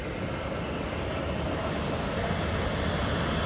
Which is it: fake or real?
real